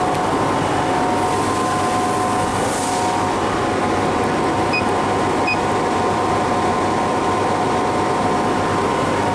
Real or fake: real